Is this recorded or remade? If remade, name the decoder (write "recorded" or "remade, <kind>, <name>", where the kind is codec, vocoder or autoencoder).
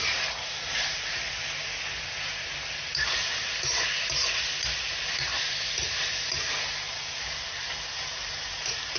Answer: recorded